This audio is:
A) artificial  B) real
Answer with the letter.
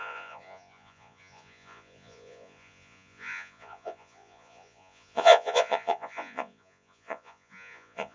A